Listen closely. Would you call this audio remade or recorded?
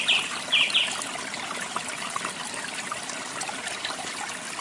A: recorded